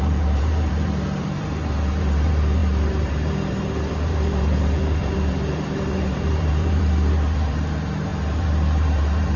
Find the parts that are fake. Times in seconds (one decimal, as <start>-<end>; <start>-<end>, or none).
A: 0.0-9.4